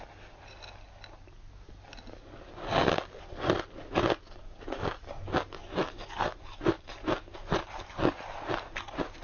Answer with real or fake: real